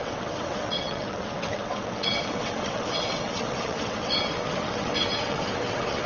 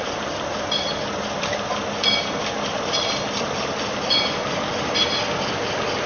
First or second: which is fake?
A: first